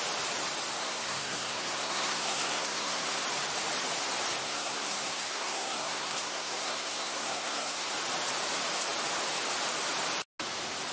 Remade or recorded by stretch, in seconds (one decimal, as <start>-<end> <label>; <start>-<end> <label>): 0.0-0.8 recorded; 0.8-3.2 remade; 3.2-4.4 recorded; 4.4-7.9 remade; 7.9-10.9 recorded